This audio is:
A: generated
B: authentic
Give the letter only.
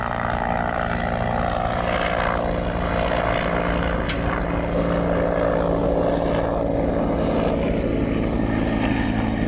B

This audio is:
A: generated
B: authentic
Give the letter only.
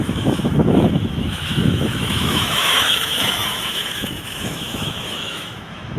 A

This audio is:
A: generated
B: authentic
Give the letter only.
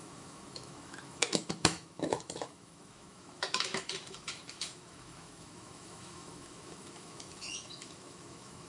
A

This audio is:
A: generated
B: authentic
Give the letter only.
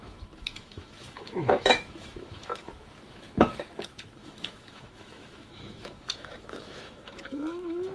A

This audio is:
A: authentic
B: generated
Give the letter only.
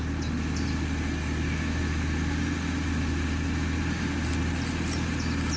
A